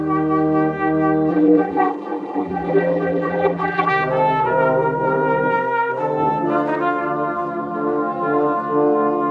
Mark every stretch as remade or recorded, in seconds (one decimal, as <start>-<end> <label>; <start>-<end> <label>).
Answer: 0.0-1.3 recorded; 1.3-3.9 remade; 3.9-9.3 recorded